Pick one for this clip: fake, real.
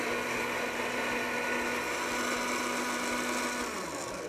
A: real